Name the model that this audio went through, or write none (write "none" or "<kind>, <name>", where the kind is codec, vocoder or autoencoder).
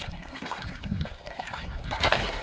codec, SNAC